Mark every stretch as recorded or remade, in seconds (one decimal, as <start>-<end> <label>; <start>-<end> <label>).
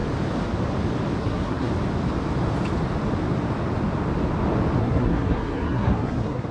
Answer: 0.0-1.2 recorded; 1.2-1.7 remade; 1.7-4.8 recorded; 4.8-6.5 remade